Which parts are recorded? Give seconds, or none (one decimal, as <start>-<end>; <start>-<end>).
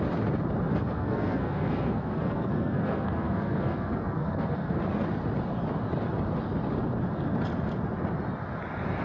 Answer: 0.0-0.7; 4.8-9.0